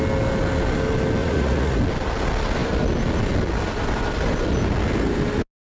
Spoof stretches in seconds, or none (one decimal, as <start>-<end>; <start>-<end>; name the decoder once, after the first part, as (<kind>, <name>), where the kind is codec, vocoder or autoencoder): 1.2-1.8 (vocoder, Vocos)